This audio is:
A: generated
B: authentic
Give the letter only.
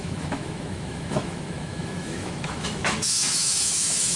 A